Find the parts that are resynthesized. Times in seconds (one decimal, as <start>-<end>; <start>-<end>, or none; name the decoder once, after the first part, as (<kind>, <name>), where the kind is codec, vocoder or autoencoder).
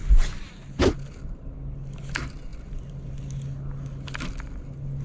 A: none